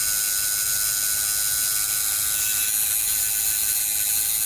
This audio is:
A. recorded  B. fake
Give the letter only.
A